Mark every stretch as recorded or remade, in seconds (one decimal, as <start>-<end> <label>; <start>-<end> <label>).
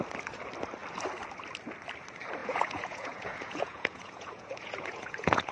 0.0-2.4 recorded; 2.4-5.5 remade